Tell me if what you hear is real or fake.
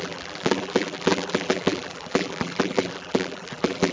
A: fake